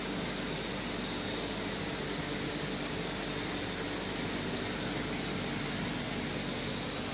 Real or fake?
real